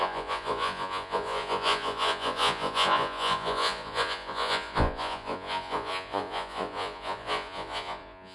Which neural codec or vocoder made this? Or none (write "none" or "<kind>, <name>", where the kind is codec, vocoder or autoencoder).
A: vocoder, Vocos